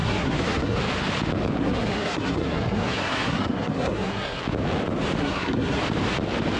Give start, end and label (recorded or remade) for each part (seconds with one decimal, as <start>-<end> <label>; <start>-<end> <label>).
0.0-0.8 remade; 0.8-1.6 recorded; 1.6-4.4 remade; 4.4-5.2 recorded; 5.2-5.8 remade; 5.8-6.6 recorded